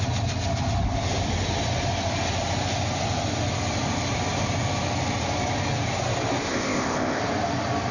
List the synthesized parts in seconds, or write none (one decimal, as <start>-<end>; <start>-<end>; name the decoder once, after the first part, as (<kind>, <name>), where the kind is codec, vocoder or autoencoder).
6.4-7.2 (codec, ZipCodec)